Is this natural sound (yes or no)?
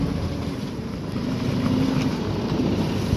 no